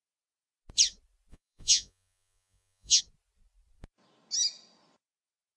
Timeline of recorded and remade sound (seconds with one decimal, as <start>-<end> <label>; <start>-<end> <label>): 0.0-1.3 recorded; 1.3-3.0 remade; 3.0-5.6 recorded